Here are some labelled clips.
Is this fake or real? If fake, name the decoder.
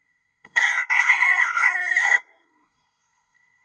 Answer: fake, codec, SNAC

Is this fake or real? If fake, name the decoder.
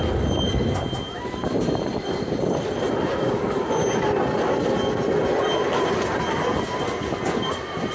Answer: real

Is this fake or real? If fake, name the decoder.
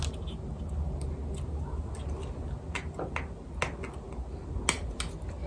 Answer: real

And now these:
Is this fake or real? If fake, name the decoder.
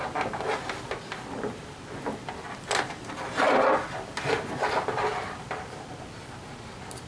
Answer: real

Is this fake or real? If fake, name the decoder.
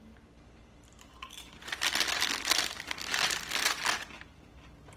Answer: real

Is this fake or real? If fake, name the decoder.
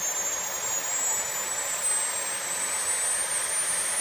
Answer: real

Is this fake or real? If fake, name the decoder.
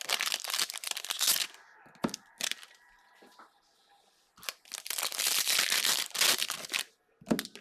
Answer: real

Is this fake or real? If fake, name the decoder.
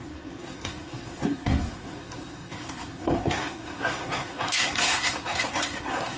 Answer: fake, codec, SNAC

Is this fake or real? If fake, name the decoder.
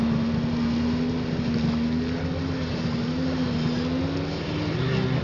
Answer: real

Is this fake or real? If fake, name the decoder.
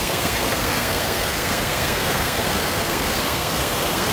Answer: fake, codec, SNAC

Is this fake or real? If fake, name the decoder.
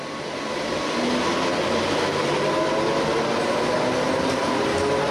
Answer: real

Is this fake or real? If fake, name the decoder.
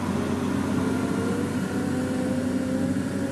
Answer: real